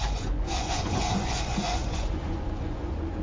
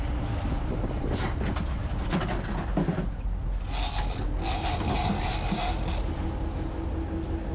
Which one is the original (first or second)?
second